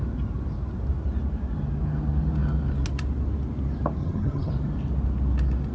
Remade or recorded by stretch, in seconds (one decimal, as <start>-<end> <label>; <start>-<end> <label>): 0.0-4.0 recorded; 4.0-4.5 remade; 4.5-5.7 recorded